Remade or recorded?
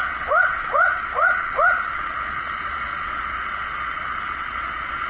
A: remade